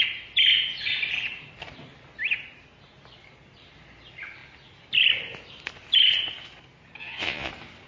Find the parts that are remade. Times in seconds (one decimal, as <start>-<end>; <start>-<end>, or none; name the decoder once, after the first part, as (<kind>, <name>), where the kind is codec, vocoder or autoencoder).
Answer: 7.0-7.5 (vocoder, Vocos)